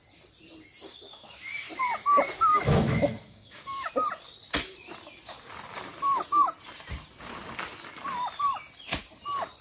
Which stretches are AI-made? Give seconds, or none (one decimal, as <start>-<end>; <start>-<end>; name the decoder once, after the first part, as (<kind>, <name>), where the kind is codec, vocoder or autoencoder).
0.9-1.7 (autoencoder, DAC-VAE); 2.5-3.9